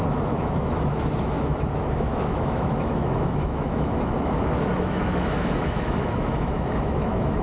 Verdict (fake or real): fake